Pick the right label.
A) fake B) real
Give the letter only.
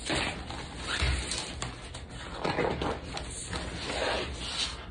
B